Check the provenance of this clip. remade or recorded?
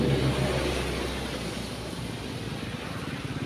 recorded